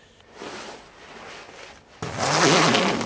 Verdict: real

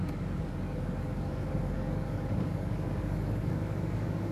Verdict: fake